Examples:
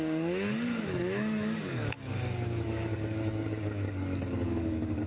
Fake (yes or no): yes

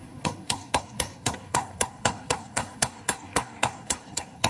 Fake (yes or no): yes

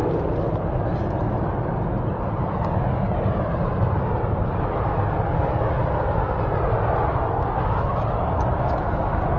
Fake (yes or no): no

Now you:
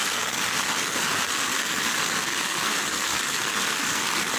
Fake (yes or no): yes